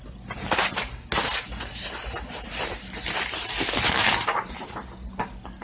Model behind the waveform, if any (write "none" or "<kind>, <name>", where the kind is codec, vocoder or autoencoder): none